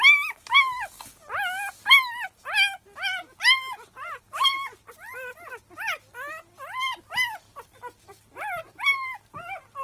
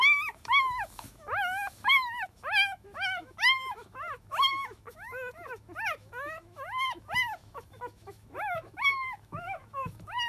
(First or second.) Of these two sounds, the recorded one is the first